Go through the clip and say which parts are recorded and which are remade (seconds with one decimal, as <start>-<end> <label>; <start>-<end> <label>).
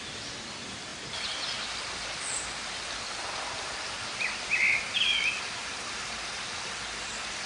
0.0-7.5 recorded